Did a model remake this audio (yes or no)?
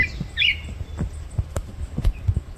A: no